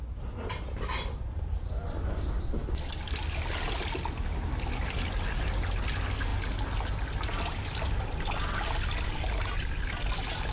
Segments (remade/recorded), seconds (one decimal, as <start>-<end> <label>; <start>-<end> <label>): 0.0-10.5 recorded